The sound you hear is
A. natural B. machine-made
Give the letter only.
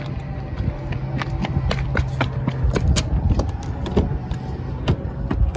A